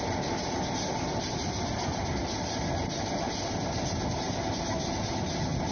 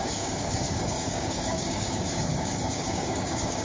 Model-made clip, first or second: second